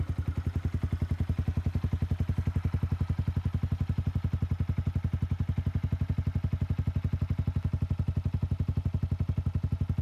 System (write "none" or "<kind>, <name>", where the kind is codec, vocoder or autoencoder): none